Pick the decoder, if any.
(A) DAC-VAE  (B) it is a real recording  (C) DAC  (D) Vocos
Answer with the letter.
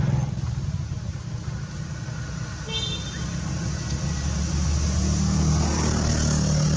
B